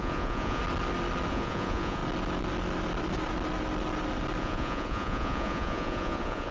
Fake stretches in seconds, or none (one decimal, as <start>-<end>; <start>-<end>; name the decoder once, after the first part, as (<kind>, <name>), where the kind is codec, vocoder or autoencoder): 0.0-0.6 (vocoder, Vocos); 1.3-2.0; 4.4-6.5